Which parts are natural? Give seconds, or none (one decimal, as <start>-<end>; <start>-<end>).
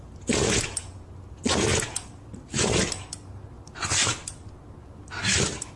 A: 0.0-5.8